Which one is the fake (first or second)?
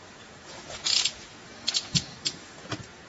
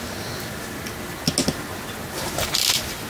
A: first